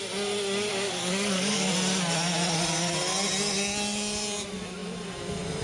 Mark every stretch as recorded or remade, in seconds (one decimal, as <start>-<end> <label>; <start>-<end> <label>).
0.0-0.7 recorded; 0.7-1.7 remade; 1.7-5.6 recorded